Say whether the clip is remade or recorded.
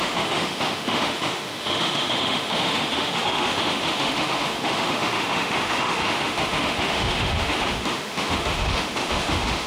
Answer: remade